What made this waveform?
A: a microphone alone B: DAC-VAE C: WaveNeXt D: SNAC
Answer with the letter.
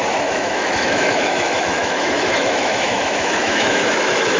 B